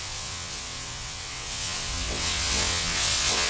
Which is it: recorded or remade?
remade